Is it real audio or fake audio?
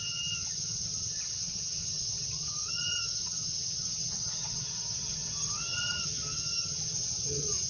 fake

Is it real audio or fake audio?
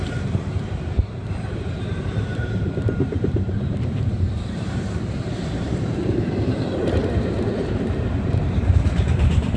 fake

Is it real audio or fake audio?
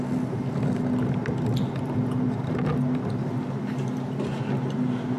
real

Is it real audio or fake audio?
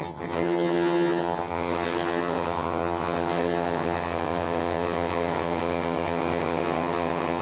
fake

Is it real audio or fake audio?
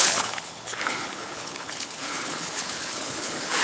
fake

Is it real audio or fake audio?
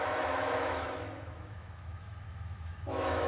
fake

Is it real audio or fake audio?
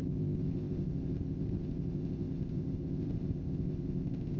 fake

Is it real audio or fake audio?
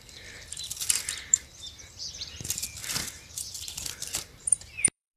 fake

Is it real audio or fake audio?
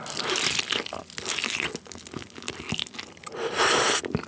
real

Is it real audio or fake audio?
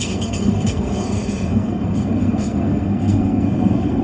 fake